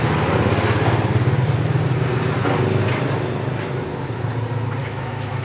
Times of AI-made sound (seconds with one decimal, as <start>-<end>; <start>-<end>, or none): 4.8-5.4